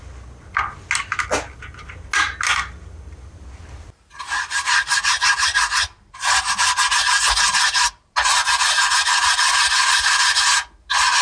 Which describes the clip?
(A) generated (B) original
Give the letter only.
B